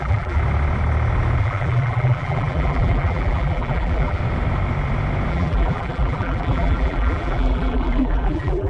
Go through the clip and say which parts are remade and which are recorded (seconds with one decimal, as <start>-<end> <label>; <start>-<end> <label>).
0.0-0.4 remade; 0.4-1.4 recorded; 1.4-4.2 remade; 4.2-5.3 recorded; 5.3-8.7 remade